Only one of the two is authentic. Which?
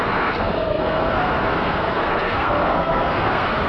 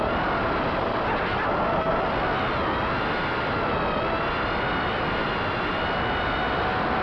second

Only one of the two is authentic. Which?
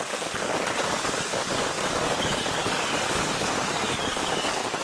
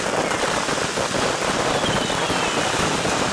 second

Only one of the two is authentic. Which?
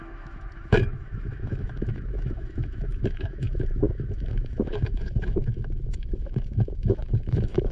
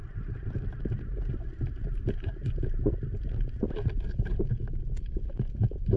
second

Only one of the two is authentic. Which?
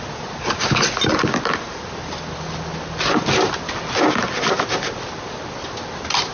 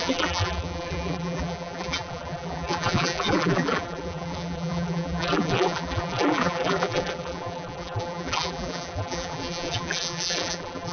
first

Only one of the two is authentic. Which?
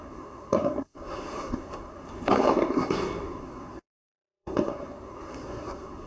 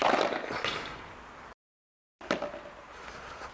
second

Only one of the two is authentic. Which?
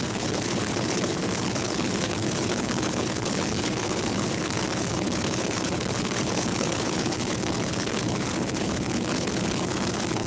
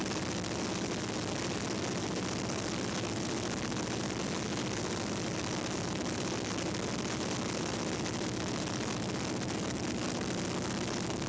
second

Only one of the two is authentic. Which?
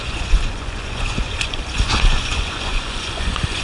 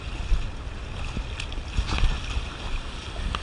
second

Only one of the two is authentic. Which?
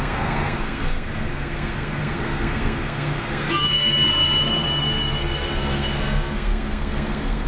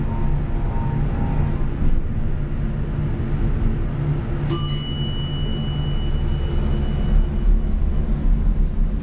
second